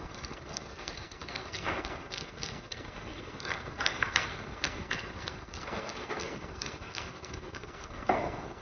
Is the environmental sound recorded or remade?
remade